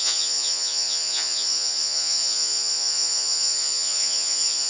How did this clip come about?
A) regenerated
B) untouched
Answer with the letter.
A